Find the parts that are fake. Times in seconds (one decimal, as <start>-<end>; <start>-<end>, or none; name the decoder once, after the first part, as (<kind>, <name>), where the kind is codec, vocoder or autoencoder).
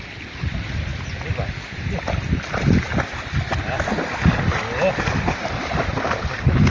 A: none